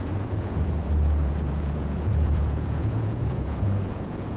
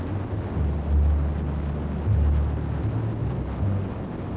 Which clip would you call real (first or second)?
second